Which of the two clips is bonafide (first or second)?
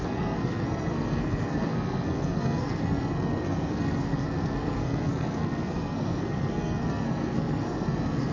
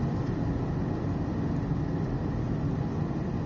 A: second